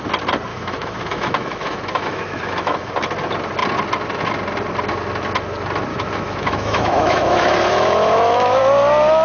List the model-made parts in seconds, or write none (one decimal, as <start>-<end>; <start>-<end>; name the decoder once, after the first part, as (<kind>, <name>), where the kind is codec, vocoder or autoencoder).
0.5-2.9 (autoencoder, DAC-VAE); 5.9-8.6